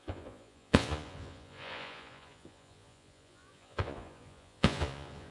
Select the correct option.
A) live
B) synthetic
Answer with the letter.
B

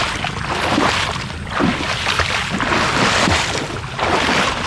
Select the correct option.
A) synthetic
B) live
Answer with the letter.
B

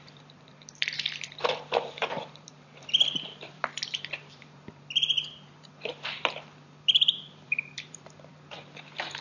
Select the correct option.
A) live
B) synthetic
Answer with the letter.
B